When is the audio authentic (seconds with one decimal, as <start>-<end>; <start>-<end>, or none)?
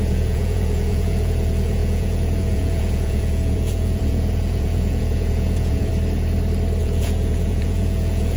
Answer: 5.9-6.8